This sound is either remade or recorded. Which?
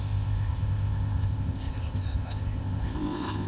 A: remade